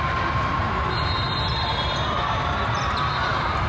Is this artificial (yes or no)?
no